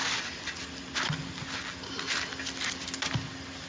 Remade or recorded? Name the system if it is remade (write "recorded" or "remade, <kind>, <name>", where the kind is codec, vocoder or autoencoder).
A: recorded